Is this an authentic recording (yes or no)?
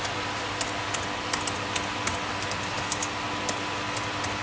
yes